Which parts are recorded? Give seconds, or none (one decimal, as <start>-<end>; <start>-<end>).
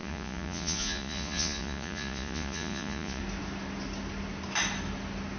3.2-5.4